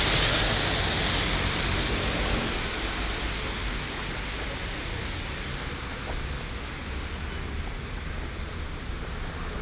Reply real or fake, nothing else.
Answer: real